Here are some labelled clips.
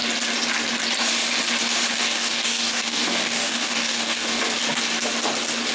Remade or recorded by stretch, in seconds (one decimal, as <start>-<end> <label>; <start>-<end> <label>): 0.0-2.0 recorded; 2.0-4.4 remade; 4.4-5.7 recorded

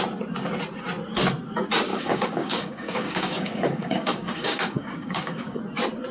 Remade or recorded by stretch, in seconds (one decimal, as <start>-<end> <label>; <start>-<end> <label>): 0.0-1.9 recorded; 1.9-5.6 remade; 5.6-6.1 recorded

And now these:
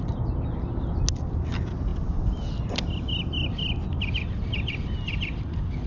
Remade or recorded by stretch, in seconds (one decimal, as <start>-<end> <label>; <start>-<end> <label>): 0.0-5.9 recorded

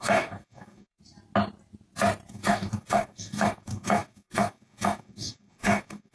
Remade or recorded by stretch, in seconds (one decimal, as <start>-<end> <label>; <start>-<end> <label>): 0.0-1.0 remade; 1.0-2.3 recorded; 2.3-6.1 remade